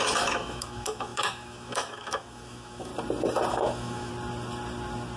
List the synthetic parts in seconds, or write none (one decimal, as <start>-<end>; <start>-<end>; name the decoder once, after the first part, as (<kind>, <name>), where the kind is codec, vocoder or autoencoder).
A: 0.0-2.9 (autoencoder, DAC-VAE); 3.5-4.1

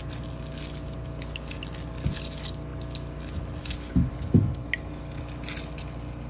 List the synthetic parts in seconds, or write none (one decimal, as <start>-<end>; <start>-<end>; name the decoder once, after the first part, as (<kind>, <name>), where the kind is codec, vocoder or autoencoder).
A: none

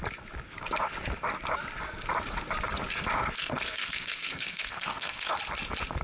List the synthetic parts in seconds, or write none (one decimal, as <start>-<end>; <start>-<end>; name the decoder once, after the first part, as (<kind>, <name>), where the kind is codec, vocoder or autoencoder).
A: 3.4-5.4 (codec, SNAC)

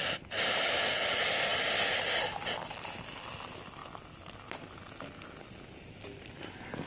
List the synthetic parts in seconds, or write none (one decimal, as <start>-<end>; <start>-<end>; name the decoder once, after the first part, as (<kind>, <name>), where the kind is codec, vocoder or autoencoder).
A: none

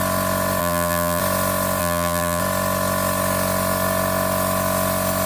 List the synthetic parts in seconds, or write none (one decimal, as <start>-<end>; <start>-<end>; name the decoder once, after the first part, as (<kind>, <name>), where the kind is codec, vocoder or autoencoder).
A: 0.6-1.2 (vocoder, BigVGAN v2); 1.8-2.4

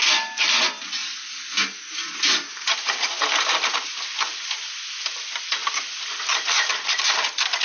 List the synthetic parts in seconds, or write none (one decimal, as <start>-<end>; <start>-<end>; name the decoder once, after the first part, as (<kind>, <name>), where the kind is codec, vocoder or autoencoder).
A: 5.6-7.6 (vocoder, BigVGAN v2)